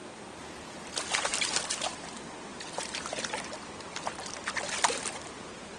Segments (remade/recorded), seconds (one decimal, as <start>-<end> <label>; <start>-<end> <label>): 0.0-1.9 remade; 1.9-2.5 recorded; 2.5-5.2 remade; 5.2-5.8 recorded